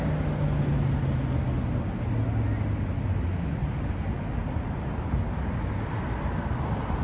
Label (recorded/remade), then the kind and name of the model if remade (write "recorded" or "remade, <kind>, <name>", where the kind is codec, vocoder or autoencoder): recorded